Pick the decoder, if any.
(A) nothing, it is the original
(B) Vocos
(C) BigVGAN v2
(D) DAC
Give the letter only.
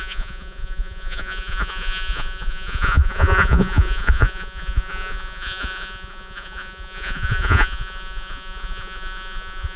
B